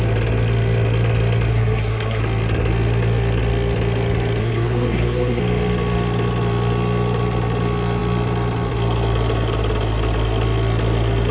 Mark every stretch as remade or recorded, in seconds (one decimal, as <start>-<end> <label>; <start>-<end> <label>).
0.0-1.5 recorded; 1.5-2.2 remade; 2.2-4.4 recorded; 4.4-5.4 remade; 5.4-11.3 recorded